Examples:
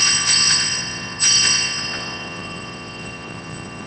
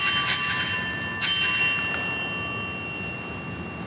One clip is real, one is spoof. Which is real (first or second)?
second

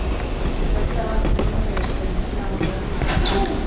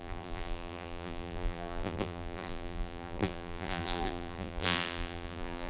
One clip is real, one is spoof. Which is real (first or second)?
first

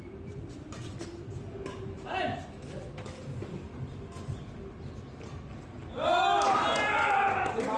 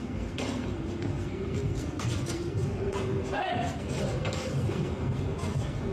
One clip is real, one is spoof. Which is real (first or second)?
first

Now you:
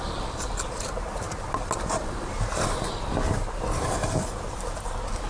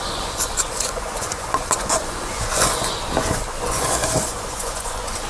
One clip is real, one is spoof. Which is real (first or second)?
first